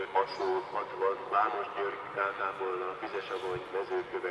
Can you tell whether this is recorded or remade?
recorded